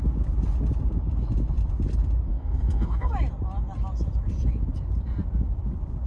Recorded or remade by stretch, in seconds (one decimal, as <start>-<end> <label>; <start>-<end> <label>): 0.0-2.3 recorded; 2.3-3.1 remade; 3.1-6.1 recorded